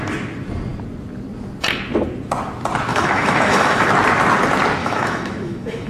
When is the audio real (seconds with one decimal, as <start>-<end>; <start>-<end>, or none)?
0.0-2.9; 3.9-4.8